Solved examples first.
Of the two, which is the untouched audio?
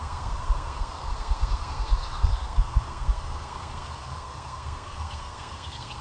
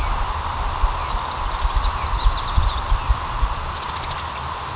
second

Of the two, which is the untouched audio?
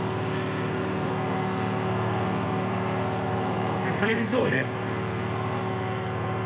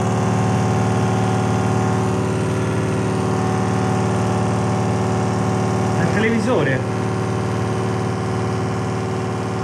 second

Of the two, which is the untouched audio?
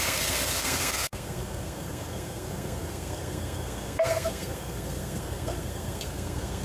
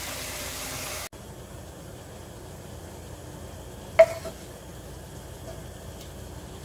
second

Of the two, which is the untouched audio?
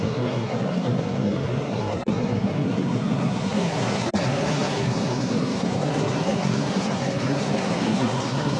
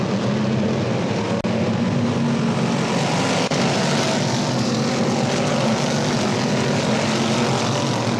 second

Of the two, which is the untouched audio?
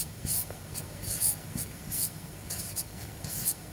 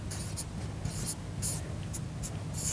second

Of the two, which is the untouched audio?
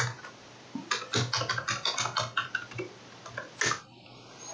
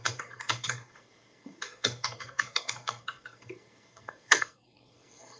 first